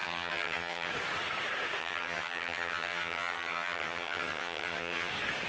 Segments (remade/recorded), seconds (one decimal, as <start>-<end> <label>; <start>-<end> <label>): 0.0-0.9 remade; 0.9-1.8 recorded; 1.8-5.1 remade; 5.1-5.5 recorded